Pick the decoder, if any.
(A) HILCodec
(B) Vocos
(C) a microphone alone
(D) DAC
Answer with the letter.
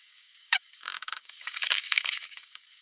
D